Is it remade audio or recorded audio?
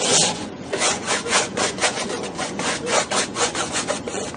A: remade